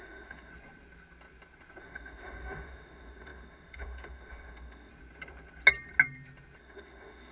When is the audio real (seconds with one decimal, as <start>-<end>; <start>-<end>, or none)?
0.5-1.8; 4.9-6.6

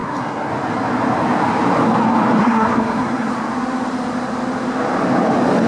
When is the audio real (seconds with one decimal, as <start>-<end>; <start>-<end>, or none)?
0.5-2.4; 3.3-5.7

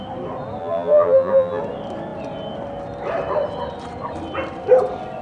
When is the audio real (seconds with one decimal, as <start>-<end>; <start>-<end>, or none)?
0.0-0.6; 1.6-5.2

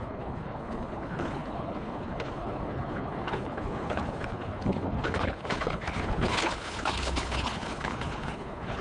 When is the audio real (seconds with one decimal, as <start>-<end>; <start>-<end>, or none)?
none